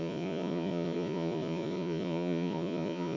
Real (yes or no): no